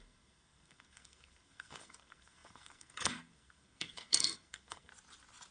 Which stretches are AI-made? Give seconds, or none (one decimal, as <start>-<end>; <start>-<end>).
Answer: 0.0-4.9